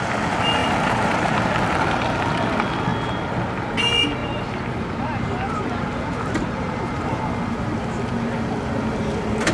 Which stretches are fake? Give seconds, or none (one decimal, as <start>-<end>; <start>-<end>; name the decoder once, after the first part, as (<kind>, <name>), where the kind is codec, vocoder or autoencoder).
0.6-1.5 (vocoder, BigVGAN v2); 4.2-7.2